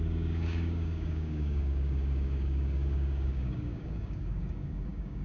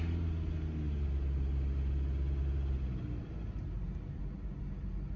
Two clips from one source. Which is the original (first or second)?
second